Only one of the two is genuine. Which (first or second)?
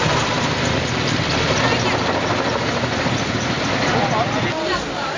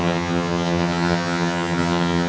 first